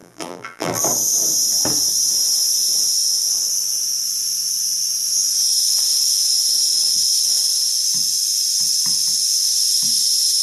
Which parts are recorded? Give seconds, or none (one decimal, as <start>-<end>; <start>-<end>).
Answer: 0.8-10.4